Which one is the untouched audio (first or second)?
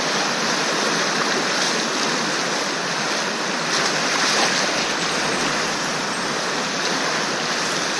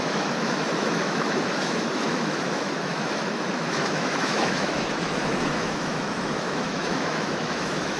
first